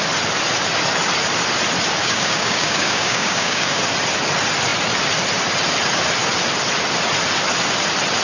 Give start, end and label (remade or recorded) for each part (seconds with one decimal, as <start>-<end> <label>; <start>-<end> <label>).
0.0-2.0 recorded; 2.0-3.8 remade; 3.8-8.2 recorded